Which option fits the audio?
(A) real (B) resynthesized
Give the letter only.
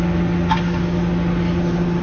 A